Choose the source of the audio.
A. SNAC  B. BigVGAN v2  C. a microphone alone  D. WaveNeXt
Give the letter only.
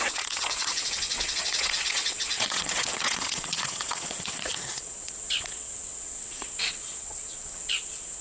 D